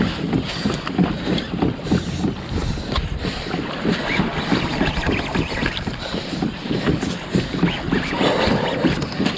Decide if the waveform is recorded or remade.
recorded